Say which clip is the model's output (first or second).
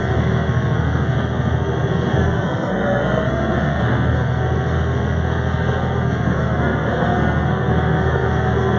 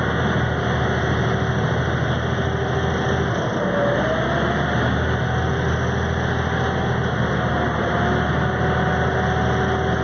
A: first